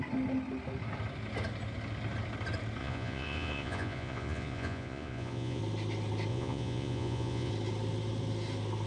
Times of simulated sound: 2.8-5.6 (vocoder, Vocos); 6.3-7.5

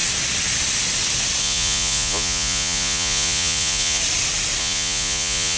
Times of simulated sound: 1.4-4.0 (vocoder, Vocos); 4.6-5.6

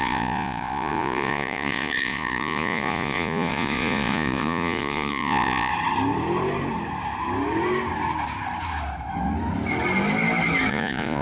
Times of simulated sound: 0.0-5.7 (vocoder, Vocos); 10.7-11.2